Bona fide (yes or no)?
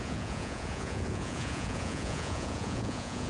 no